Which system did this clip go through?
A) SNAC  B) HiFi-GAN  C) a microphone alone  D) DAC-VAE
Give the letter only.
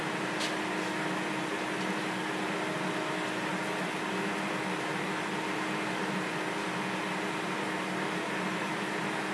C